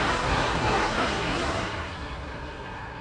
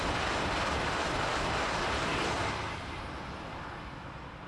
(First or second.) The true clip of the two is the second